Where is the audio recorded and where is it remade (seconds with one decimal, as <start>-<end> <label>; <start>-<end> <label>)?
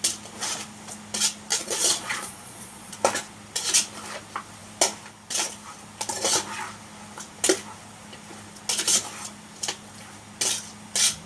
0.0-1.5 recorded; 1.5-2.9 remade; 2.9-11.3 recorded